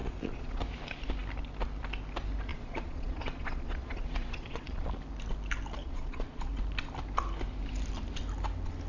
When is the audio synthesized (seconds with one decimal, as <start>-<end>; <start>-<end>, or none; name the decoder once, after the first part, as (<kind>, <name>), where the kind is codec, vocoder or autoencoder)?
0.0-0.6 (vocoder, Vocos); 2.5-4.9; 5.8-6.5